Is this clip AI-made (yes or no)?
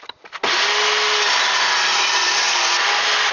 no